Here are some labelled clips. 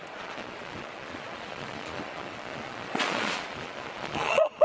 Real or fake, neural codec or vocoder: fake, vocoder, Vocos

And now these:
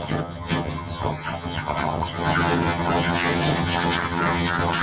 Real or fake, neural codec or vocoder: fake, vocoder, HiFi-GAN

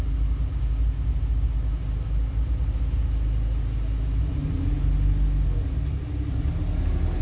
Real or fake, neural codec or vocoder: real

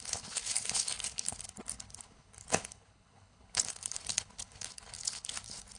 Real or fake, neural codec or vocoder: fake, codec, HILCodec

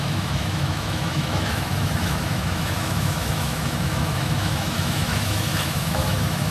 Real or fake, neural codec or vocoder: fake, autoencoder, DAC-VAE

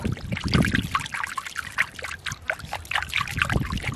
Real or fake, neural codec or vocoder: real